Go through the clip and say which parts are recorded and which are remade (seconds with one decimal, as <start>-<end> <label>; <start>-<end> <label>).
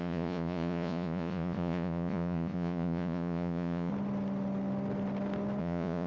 0.0-3.9 remade; 3.9-5.6 recorded; 5.6-6.1 remade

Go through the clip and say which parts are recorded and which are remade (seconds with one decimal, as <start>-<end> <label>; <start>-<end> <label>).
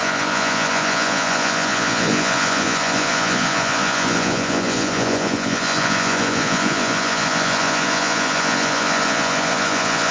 0.0-10.1 remade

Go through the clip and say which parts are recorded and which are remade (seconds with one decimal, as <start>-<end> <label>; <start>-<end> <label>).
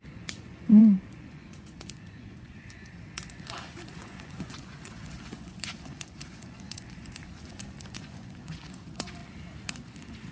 0.0-9.2 remade; 9.2-9.7 recorded; 9.7-10.3 remade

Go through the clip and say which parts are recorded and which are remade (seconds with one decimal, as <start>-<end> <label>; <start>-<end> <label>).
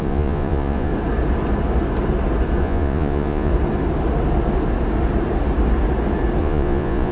0.0-0.9 remade; 0.9-2.6 recorded; 2.6-3.5 remade; 3.5-6.4 recorded; 6.4-7.1 remade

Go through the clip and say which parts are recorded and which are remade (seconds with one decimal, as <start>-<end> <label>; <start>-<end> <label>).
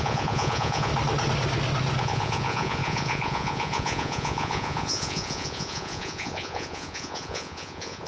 0.0-0.9 remade; 0.9-2.0 recorded; 2.0-8.1 remade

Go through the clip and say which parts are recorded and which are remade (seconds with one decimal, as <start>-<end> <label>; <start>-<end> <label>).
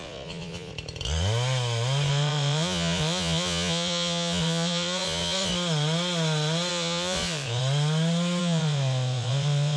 0.0-0.7 remade; 0.7-2.1 recorded; 2.1-5.5 remade; 5.5-6.7 recorded; 6.7-7.6 remade; 7.6-8.4 recorded; 8.4-9.8 remade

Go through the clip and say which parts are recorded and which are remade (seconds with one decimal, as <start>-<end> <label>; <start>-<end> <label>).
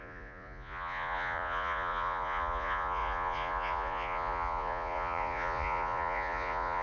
0.0-6.8 remade